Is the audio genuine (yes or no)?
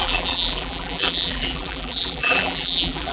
no